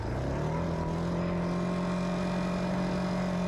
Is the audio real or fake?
real